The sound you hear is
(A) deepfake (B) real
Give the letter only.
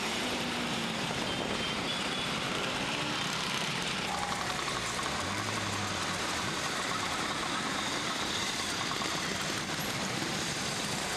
A